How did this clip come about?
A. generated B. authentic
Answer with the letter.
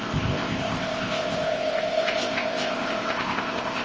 A